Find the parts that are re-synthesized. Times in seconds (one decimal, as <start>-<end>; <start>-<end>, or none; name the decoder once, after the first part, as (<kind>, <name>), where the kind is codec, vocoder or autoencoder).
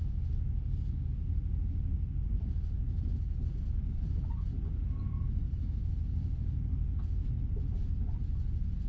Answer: none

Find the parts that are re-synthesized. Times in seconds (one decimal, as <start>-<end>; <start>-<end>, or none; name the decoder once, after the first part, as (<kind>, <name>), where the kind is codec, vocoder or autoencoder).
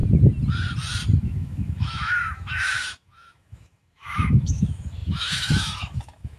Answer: 1.2-6.4 (autoencoder, DAC-VAE)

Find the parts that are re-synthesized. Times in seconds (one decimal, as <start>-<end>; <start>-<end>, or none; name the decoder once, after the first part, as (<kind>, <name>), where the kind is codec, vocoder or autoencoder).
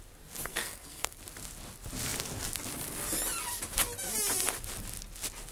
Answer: 0.5-1.2 (codec, SNAC)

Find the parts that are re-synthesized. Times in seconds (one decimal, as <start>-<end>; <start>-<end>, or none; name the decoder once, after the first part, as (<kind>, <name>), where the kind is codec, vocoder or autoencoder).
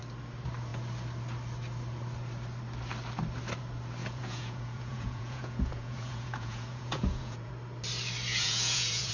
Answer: 4.0-7.5 (vocoder, Vocos); 8.3-9.1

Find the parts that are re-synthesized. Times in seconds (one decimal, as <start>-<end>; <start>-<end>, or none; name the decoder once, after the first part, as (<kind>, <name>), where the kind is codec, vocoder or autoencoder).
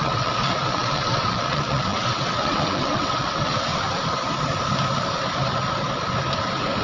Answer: 0.0-3.7 (vocoder, WaveNeXt)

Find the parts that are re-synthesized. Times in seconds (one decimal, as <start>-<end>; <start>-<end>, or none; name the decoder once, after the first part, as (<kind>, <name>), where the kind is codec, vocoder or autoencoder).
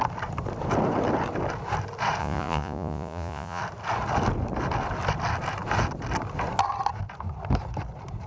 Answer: 2.2-3.6 (vocoder, Vocos)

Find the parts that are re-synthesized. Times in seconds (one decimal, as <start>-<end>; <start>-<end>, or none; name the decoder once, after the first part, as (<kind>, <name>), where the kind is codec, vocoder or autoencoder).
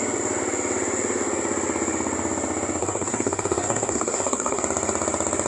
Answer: 2.8-4.6 (codec, SNAC)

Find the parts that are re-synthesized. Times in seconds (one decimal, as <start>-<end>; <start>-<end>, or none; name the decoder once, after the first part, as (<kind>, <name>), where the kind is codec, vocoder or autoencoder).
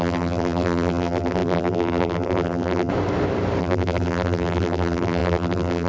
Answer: 0.0-2.9 (vocoder, BigVGAN v2); 3.6-5.9